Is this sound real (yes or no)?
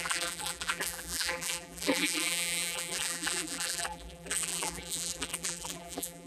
no